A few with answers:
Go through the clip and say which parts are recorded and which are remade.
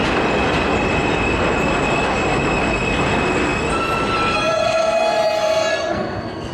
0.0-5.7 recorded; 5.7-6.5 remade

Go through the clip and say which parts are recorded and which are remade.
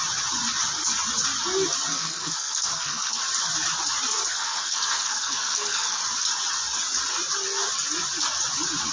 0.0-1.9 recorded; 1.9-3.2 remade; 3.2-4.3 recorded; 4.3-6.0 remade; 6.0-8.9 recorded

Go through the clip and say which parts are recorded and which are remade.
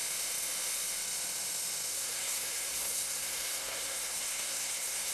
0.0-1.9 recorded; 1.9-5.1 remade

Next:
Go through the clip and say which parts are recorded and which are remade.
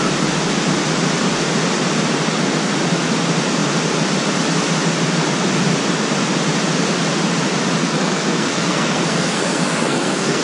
0.0-7.8 recorded; 7.8-10.4 remade